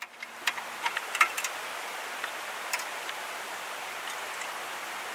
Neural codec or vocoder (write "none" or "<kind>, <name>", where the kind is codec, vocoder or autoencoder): none